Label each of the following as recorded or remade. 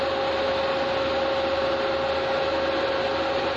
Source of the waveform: recorded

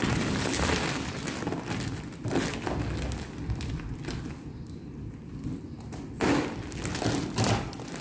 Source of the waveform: recorded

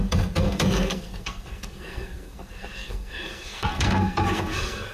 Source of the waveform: remade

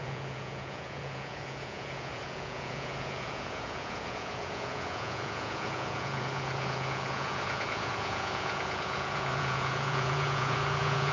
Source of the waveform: remade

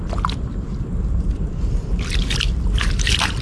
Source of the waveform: recorded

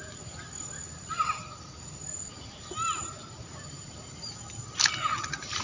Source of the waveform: recorded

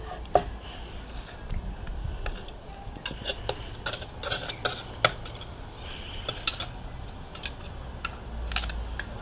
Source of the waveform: recorded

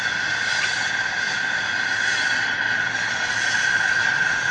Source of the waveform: recorded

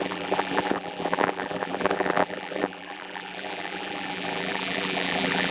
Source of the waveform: remade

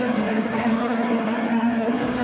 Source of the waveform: remade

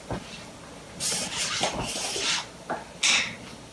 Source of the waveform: recorded